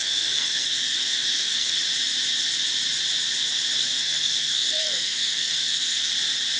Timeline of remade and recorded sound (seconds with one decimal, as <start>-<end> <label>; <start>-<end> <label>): 0.0-1.8 remade; 1.8-3.8 recorded; 3.8-6.1 remade; 6.1-6.6 recorded